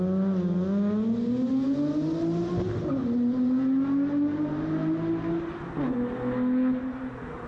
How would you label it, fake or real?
real